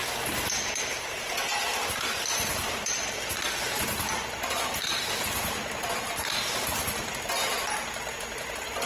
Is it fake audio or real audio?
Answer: real